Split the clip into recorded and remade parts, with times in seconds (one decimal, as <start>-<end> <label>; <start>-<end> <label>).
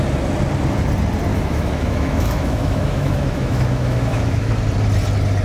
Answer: 0.0-1.3 recorded; 1.3-4.5 remade; 4.5-5.4 recorded